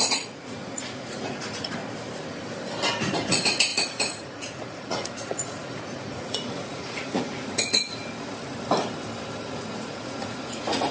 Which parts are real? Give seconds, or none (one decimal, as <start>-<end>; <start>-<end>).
1.8-3.3; 8.0-9.5